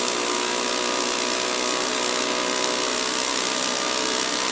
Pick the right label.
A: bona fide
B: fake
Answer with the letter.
A